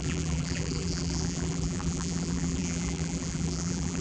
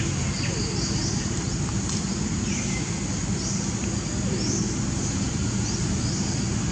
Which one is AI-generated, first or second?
first